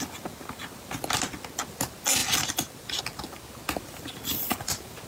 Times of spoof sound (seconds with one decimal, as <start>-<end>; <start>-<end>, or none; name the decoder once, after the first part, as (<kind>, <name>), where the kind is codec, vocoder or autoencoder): 2.2-3.0 (vocoder, BigVGAN v2)